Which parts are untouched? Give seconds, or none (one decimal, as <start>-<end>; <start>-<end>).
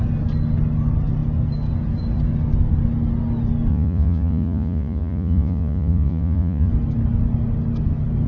0.0-3.7; 6.7-8.3